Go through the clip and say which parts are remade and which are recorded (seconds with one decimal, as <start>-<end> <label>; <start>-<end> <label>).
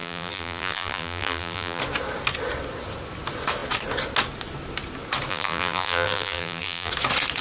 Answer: 0.0-1.8 remade; 1.8-5.3 recorded; 5.3-6.9 remade; 6.9-7.4 recorded